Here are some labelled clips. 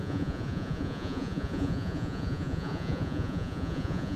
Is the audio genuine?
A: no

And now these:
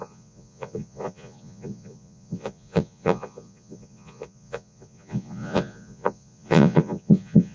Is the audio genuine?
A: no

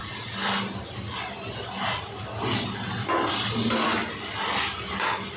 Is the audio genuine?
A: yes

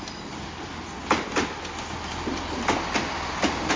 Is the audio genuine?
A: yes